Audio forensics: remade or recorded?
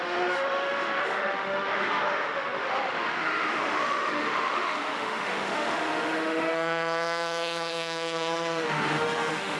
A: remade